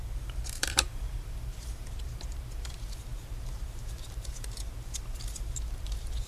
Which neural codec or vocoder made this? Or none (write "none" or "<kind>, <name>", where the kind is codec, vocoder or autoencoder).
vocoder, BigVGAN v2